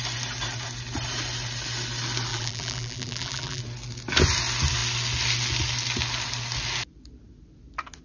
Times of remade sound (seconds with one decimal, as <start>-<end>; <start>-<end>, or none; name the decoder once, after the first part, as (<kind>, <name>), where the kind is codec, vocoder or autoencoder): 2.3-3.6 (vocoder, BigVGAN v2)